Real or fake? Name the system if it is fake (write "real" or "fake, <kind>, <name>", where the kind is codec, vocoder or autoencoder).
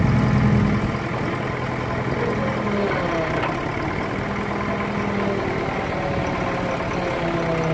real